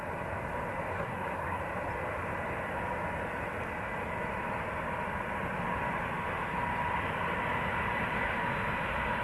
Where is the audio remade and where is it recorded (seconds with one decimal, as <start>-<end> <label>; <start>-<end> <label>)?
0.0-0.9 recorded; 0.9-1.6 remade; 1.6-9.2 recorded